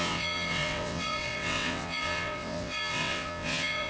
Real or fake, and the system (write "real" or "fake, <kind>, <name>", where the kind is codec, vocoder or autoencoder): fake, vocoder, WaveNeXt